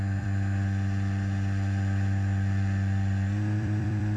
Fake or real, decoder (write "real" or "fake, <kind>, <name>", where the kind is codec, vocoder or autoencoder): fake, vocoder, BigVGAN v2